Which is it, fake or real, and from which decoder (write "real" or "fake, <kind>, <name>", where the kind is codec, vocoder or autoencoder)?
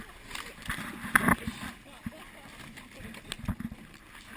real